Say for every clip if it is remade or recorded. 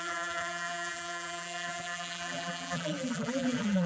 remade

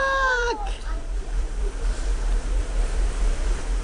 remade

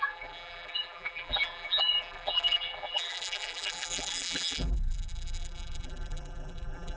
remade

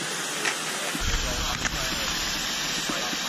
recorded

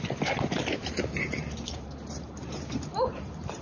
remade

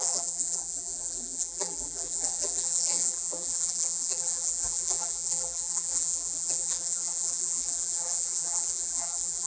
remade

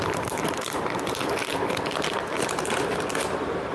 remade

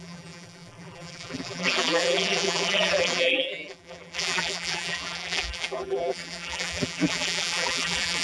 remade